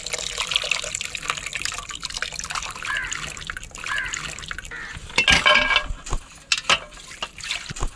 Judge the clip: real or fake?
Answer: real